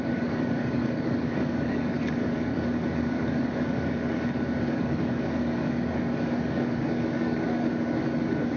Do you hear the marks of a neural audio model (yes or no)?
yes